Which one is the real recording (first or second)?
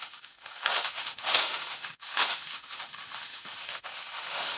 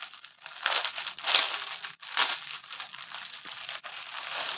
second